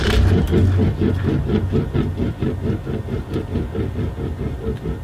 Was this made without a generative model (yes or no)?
yes